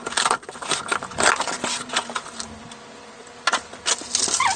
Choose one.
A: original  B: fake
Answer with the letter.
A